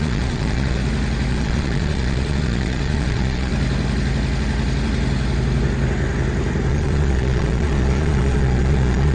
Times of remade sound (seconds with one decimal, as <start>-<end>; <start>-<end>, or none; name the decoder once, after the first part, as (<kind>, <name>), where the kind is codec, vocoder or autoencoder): 0.0-0.8 (vocoder, Vocos); 1.3-3.5; 6.7-9.1